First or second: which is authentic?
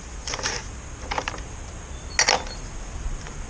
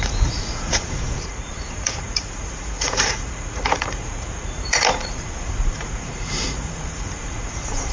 first